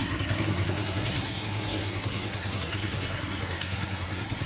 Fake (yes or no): yes